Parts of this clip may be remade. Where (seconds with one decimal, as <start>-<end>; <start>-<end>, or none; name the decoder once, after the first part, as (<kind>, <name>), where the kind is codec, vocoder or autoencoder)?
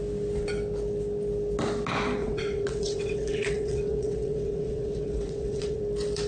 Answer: 2.2-5.8 (vocoder, WaveNeXt)